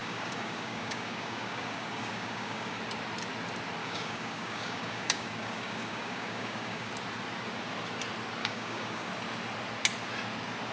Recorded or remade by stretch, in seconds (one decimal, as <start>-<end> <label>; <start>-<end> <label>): 0.0-2.8 remade; 2.8-3.8 recorded; 3.8-6.9 remade; 6.9-8.4 recorded; 8.4-9.1 remade; 9.1-10.7 recorded